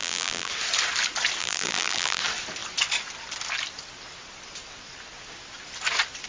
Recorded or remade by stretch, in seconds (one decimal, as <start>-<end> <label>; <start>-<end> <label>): 0.0-0.5 remade; 0.5-1.4 recorded; 1.4-2.2 remade; 2.2-6.3 recorded